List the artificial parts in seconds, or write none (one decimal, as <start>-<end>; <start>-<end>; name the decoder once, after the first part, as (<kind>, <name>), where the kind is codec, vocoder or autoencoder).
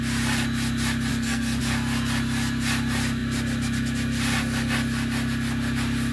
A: 1.1-1.6 (codec, SNAC)